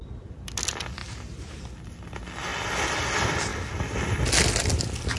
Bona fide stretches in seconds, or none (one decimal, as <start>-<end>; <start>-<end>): 0.0-1.0; 1.6-5.2